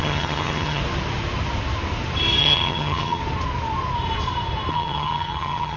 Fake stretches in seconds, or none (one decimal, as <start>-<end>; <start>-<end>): 0.0-0.8; 2.4-3.2; 4.7-5.8